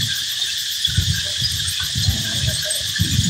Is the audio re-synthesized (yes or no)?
no